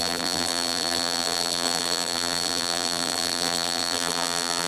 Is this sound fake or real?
fake